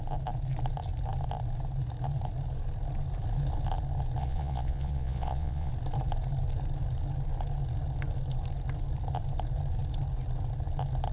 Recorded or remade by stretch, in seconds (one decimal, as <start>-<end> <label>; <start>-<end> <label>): 0.0-4.2 recorded; 4.2-5.7 remade; 5.7-11.1 recorded